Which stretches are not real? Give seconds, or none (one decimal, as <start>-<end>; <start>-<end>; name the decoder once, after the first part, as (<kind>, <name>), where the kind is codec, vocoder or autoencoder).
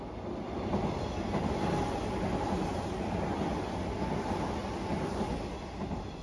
4.6-5.3 (vocoder, BigVGAN v2)